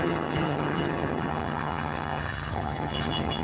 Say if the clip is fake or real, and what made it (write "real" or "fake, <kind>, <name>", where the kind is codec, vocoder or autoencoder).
fake, vocoder, HiFi-GAN